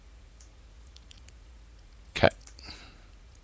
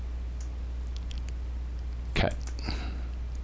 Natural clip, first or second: second